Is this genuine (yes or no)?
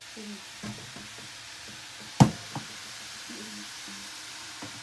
yes